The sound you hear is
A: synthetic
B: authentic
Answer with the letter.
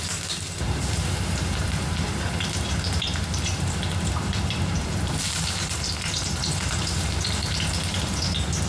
A